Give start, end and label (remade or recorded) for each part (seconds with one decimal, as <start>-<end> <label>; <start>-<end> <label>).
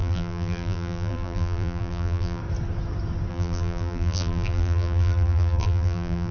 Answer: 0.0-2.4 remade; 2.4-3.3 recorded; 3.3-6.3 remade